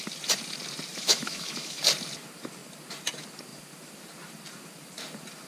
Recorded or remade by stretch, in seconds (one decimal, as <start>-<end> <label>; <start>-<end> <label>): 0.0-0.9 recorded; 0.9-1.8 remade; 1.8-5.5 recorded